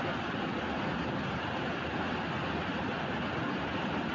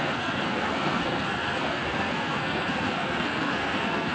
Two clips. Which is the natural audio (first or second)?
first